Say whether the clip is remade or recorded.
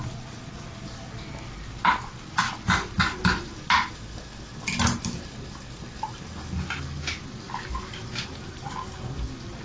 recorded